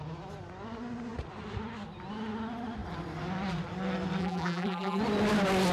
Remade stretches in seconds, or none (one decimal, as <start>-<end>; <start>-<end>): 4.2-5.0